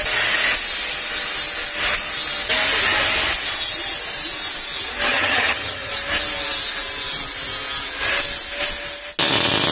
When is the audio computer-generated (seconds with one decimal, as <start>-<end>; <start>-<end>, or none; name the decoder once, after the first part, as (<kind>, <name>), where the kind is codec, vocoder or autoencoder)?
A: 5.1-5.9 (vocoder, HiFi-GAN)